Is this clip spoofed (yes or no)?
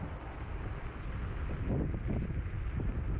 no